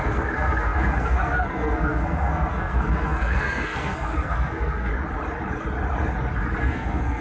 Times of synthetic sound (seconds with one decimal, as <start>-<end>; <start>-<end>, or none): 0.0-4.9; 6.6-7.2